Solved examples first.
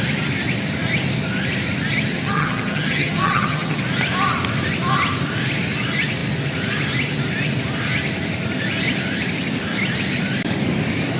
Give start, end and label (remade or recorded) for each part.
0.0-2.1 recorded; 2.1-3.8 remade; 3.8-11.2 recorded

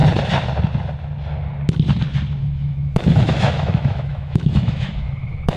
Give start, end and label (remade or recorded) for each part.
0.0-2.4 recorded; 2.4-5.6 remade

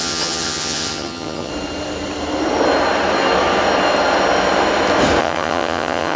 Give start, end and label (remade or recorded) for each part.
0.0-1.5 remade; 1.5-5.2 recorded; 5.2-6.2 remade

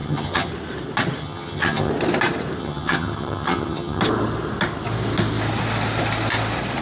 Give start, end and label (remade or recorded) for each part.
0.0-0.5 remade; 0.5-1.2 recorded; 1.2-1.9 remade; 1.9-2.6 recorded; 2.6-4.0 remade; 4.0-6.8 recorded